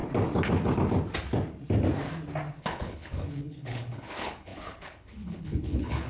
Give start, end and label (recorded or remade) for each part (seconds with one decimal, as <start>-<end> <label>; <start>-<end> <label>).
0.0-2.6 recorded; 2.6-6.1 remade

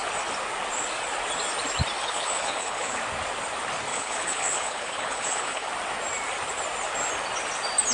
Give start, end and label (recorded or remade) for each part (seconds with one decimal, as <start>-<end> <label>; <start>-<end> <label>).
0.0-2.0 recorded; 2.0-3.0 remade; 3.0-3.9 recorded; 3.9-5.7 remade; 5.7-7.9 recorded

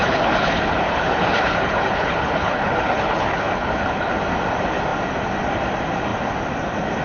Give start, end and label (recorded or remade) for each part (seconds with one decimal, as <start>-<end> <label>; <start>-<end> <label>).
0.0-4.2 remade; 4.2-7.0 recorded

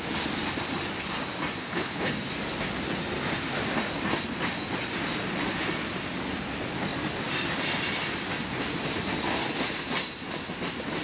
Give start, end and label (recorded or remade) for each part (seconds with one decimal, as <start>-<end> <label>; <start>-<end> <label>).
0.0-1.6 recorded; 1.6-2.1 remade; 2.1-11.0 recorded

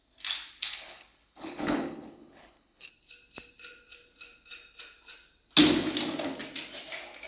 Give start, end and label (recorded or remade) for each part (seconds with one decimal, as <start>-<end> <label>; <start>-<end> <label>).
0.0-0.6 recorded; 0.6-2.9 remade; 2.9-7.3 recorded

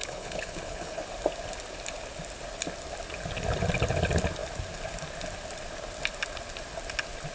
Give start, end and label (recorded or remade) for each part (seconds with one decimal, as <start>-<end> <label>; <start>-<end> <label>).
0.0-1.0 remade; 1.0-7.3 recorded

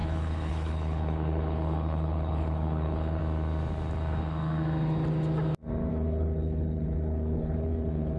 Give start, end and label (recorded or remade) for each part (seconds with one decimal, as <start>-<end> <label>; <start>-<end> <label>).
0.0-3.2 remade; 3.2-5.9 recorded; 5.9-8.2 remade